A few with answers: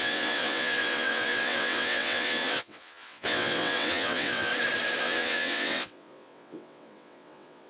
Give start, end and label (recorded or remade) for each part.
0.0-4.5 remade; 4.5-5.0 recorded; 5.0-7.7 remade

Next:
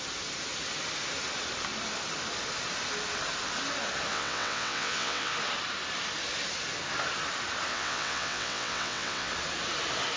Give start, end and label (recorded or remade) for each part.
0.0-4.1 recorded; 4.1-5.3 remade; 5.3-7.7 recorded; 7.7-9.3 remade; 9.3-10.2 recorded